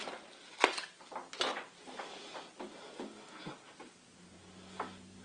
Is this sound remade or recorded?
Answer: recorded